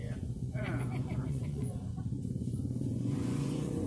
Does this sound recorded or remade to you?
remade